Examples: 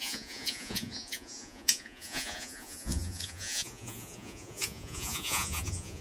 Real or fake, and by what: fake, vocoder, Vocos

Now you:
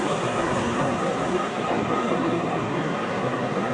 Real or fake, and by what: fake, codec, SNAC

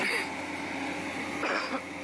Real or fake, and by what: real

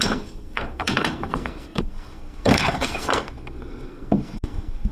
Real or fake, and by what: fake, codec, SNAC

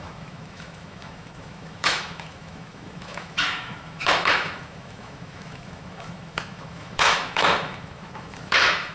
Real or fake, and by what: fake, autoencoder, DAC-VAE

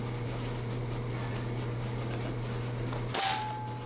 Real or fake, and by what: real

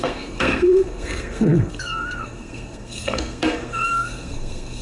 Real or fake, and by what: fake, codec, SNAC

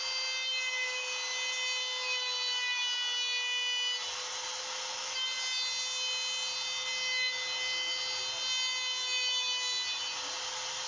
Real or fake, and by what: real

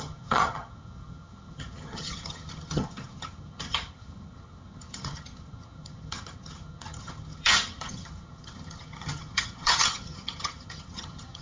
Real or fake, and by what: fake, vocoder, HiFi-GAN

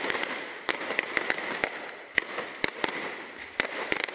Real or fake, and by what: real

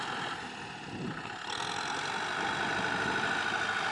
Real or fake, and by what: real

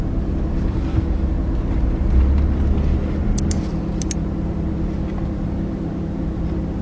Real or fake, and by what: real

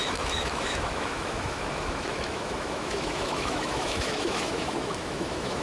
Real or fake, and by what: fake, autoencoder, DAC-VAE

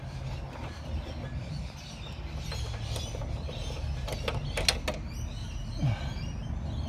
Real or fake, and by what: real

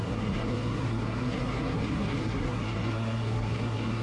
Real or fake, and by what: fake, codec, SNAC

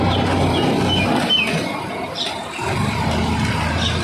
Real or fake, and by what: real